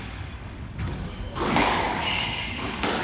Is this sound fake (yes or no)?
yes